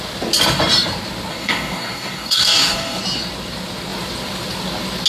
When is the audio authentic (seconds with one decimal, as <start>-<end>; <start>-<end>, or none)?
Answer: 0.0-1.3; 3.0-5.1